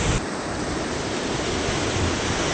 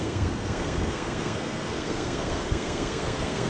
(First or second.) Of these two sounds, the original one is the first